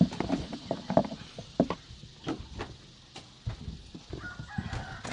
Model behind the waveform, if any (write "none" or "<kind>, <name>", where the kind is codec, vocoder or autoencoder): none